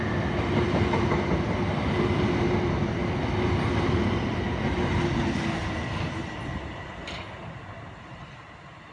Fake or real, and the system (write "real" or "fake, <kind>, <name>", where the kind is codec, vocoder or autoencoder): real